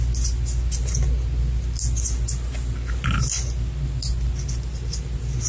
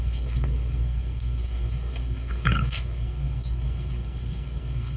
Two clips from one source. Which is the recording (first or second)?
first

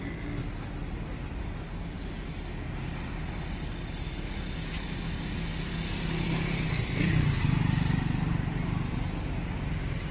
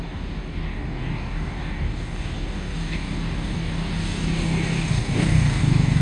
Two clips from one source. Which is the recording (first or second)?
first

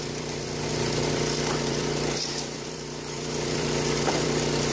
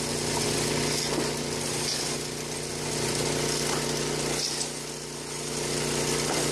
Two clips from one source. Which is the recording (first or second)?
second